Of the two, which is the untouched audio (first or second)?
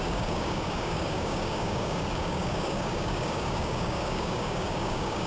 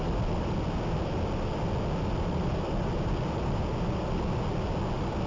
second